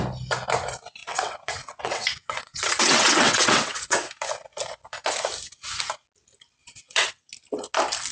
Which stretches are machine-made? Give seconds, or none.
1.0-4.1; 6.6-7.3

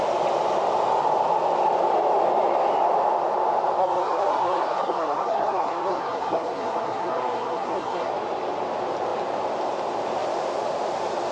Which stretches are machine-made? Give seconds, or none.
3.8-8.1

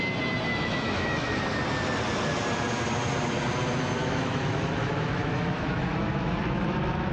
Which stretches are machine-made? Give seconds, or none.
0.5-1.4; 4.0-7.1

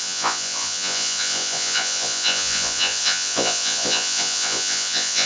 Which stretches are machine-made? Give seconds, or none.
0.0-5.3

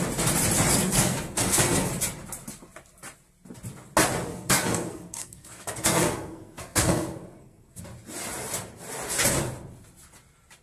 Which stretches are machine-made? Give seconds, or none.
0.7-1.9; 4.3-7.8

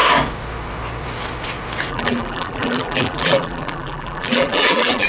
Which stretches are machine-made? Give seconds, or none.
1.9-5.1

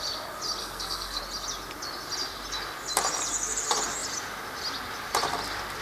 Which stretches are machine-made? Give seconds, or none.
0.6-1.2